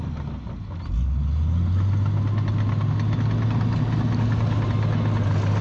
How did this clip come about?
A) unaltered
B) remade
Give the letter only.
A